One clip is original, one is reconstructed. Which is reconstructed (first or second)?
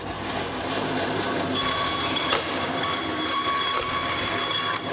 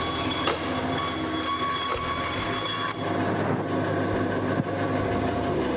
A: first